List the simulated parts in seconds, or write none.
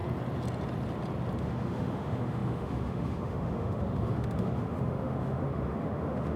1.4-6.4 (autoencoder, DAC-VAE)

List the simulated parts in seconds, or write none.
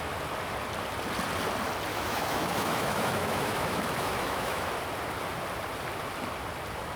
1.9-4.7 (autoencoder, DAC-VAE)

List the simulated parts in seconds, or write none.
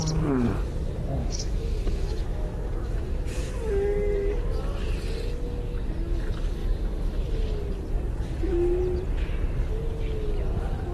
1.2-3.5 (autoencoder, DAC-VAE)